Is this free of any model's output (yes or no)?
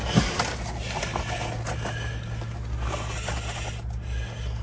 yes